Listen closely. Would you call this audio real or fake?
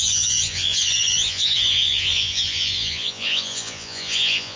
fake